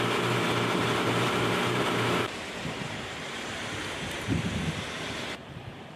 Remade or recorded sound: remade